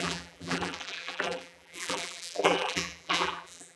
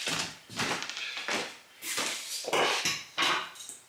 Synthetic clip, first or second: first